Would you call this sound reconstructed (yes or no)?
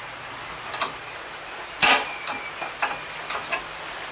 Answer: no